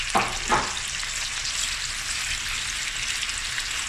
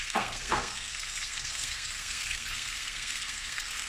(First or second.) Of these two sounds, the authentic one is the first